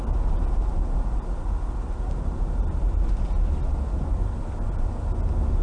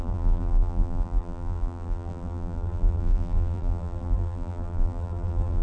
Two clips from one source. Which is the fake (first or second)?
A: second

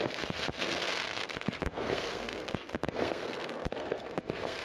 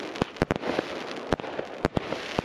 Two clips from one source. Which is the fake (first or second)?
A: first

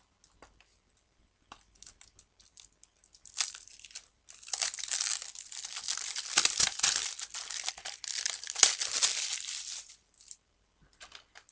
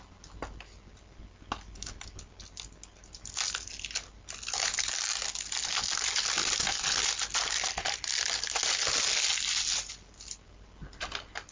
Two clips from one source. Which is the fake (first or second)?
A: first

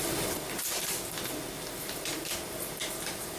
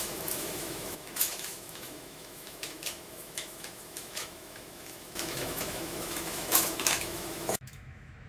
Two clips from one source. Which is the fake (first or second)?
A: second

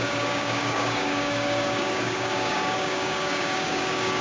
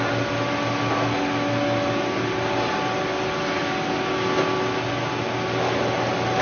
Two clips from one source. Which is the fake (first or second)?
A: first